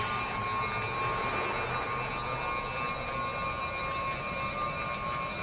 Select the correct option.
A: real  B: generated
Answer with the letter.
A